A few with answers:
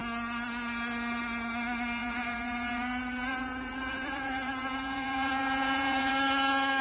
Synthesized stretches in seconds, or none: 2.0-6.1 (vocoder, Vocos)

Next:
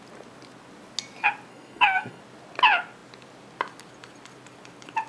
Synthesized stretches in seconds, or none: 1.5-2.2 (codec, SNAC)

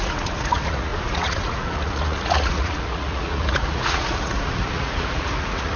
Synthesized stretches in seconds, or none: 0.0-5.8 (vocoder, Vocos)